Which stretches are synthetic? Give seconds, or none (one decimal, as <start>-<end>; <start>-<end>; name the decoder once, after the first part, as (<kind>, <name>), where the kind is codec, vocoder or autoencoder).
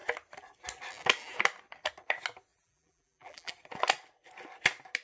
2.5-3.5 (vocoder, BigVGAN v2)